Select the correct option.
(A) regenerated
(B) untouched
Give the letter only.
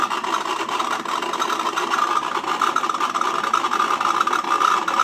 B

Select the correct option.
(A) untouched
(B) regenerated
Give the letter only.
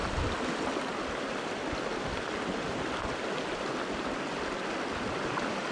A